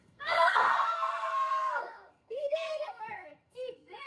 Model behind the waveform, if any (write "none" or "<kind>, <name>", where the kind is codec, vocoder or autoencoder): codec, SNAC